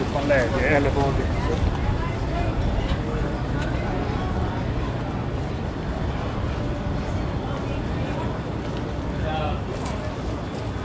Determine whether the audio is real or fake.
real